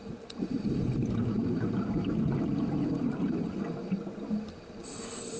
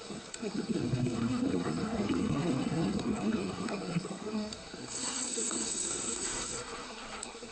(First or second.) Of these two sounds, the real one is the first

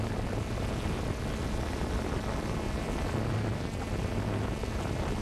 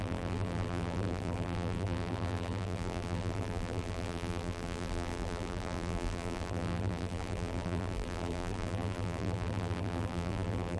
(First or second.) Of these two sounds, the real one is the first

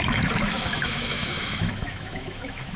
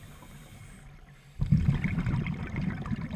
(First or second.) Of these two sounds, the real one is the second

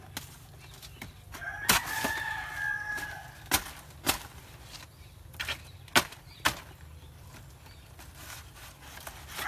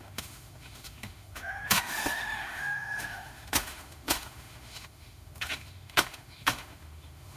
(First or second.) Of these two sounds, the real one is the first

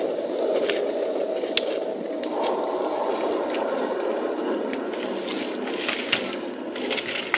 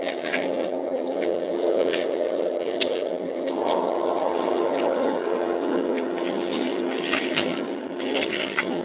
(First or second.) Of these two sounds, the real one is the first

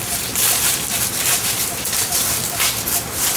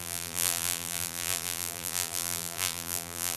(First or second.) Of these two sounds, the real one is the first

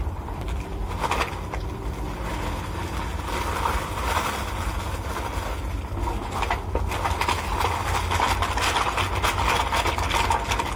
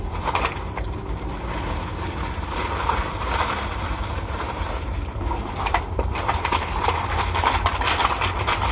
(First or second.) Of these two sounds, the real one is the first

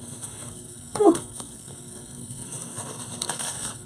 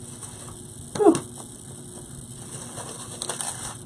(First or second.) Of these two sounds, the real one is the second